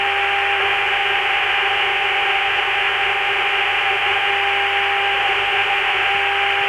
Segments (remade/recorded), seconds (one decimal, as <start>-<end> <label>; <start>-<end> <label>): 0.0-0.6 recorded; 0.6-4.3 remade; 4.3-5.2 recorded; 5.2-6.1 remade; 6.1-6.7 recorded

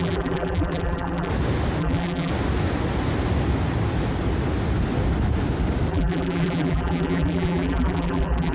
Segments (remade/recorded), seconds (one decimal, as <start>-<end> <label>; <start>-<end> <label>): 0.0-1.3 remade; 1.3-1.8 recorded; 1.8-2.3 remade; 2.3-5.9 recorded; 5.9-8.5 remade

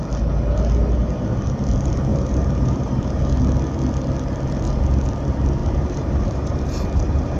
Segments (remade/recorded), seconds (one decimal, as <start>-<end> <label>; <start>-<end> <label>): 0.0-2.1 recorded; 2.1-3.2 remade; 3.2-5.6 recorded; 5.6-7.4 remade

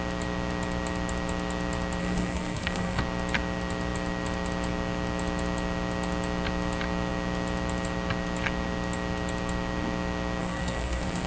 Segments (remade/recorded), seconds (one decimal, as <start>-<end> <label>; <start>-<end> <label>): 0.0-2.0 recorded; 2.0-3.0 remade; 3.0-10.4 recorded; 10.4-11.3 remade

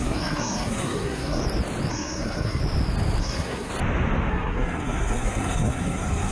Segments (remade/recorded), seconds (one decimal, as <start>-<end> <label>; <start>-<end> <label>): 0.0-1.4 remade; 1.4-1.9 recorded; 1.9-2.6 remade; 2.6-3.2 recorded; 3.2-3.7 remade; 3.7-4.3 recorded; 4.3-6.3 remade

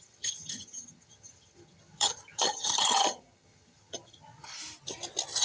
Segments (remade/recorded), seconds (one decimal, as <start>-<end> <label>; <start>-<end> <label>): 0.0-4.5 remade; 4.5-5.4 recorded

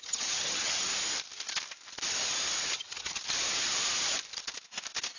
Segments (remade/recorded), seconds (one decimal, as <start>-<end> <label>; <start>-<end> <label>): 0.0-0.9 remade; 0.9-2.6 recorded; 2.6-3.2 remade; 3.2-5.2 recorded

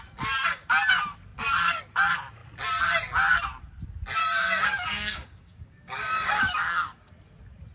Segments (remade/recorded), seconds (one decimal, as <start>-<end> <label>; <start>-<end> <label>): 0.0-4.2 recorded; 4.2-7.1 remade; 7.1-7.7 recorded